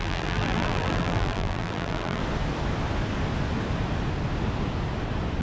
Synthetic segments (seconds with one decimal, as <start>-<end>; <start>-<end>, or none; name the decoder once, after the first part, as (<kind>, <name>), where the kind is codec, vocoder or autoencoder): 0.0-2.2 (vocoder, BigVGAN v2)